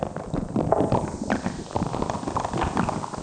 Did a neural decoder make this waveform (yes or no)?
no